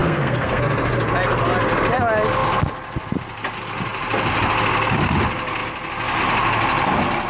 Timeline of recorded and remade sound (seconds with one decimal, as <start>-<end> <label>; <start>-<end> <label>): 0.0-0.6 remade; 0.6-7.3 recorded